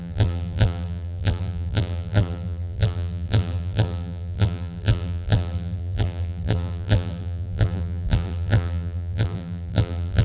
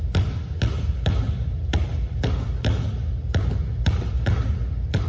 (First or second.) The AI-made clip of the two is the first